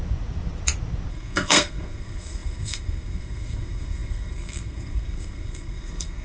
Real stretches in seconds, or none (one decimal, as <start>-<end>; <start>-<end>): 0.0-1.1